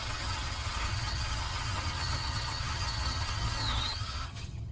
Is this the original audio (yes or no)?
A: no